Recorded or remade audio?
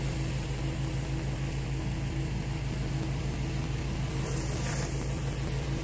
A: recorded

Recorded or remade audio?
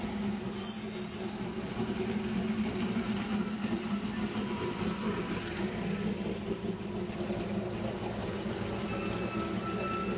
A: recorded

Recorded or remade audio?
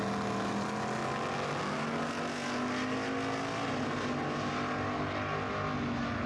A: recorded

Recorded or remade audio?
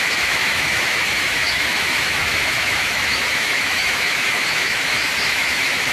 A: remade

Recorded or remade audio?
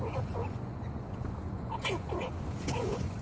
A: remade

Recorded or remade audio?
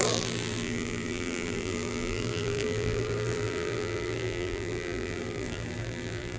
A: remade